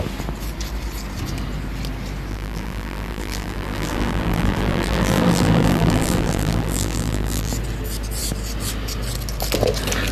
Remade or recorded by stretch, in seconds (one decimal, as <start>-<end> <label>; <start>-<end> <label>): 0.0-2.3 recorded; 2.3-7.5 remade; 7.5-10.1 recorded